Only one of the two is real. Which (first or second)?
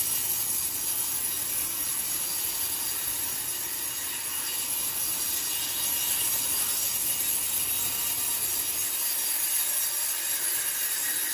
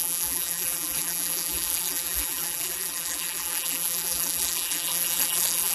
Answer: first